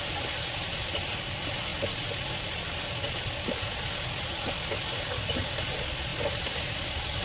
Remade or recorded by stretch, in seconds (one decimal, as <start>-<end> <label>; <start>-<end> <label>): 0.0-7.2 recorded